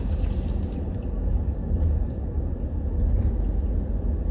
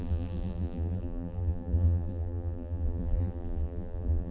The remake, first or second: second